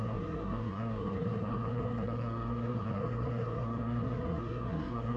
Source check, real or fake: fake